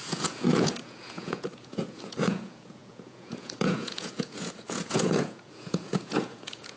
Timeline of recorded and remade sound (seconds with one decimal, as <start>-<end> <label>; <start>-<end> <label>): 0.0-6.8 remade